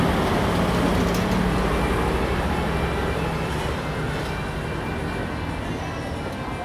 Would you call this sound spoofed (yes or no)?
no